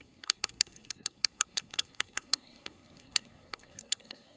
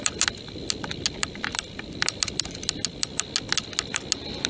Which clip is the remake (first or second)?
first